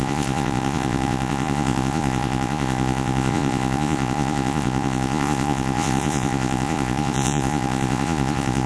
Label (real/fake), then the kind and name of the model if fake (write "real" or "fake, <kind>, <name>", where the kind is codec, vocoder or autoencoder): fake, vocoder, Vocos